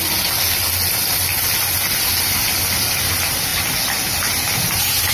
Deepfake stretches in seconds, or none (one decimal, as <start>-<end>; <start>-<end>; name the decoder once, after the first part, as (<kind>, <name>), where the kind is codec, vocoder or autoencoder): none